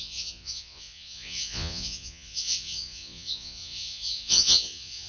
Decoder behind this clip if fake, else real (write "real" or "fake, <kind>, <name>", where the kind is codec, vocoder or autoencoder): fake, vocoder, Vocos